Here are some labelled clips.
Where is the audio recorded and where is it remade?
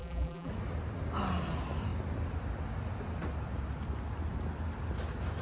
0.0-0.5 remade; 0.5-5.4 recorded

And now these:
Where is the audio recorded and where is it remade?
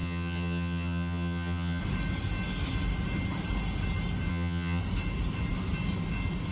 0.0-1.8 remade; 1.8-4.3 recorded; 4.3-4.8 remade; 4.8-6.5 recorded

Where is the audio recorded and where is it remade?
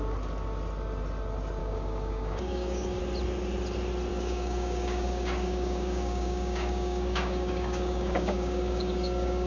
0.0-1.6 recorded; 1.6-3.0 remade; 3.0-4.1 recorded; 4.1-9.5 remade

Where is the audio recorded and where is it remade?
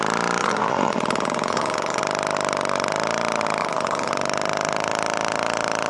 0.0-0.4 recorded; 0.4-2.0 remade; 2.0-3.6 recorded; 3.6-4.1 remade; 4.1-5.9 recorded